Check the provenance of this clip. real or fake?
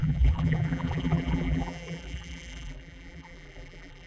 fake